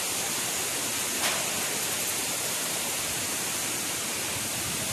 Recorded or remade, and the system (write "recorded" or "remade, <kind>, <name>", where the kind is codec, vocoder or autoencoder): recorded